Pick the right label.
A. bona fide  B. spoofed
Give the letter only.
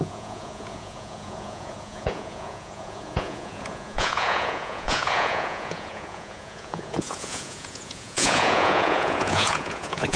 B